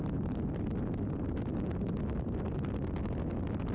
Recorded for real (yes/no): yes